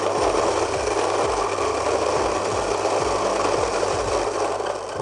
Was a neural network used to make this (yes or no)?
no